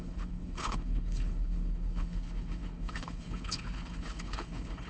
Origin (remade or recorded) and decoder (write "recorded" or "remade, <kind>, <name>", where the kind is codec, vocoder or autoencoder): remade, codec, HILCodec